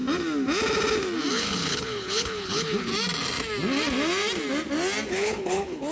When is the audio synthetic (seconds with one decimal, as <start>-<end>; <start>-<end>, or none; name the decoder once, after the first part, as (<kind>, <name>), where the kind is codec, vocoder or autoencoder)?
1.3-2.9 (codec, HILCodec); 5.1-5.9